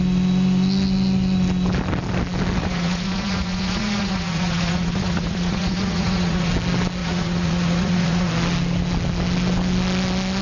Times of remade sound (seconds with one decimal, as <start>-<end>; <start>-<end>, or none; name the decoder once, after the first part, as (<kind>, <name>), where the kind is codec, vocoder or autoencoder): 2.6-6.5 (vocoder, Vocos); 7.0-8.3